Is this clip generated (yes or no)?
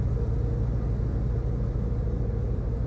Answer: no